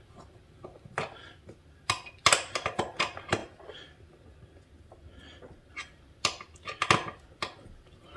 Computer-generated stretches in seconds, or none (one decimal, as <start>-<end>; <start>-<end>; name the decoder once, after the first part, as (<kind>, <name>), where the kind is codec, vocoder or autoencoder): none